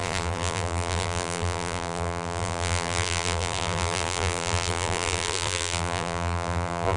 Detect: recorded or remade remade